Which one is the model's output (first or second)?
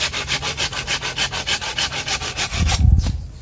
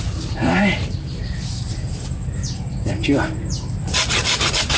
second